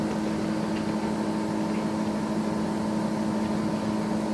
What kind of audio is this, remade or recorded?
recorded